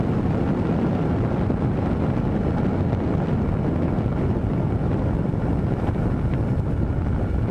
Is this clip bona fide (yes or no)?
yes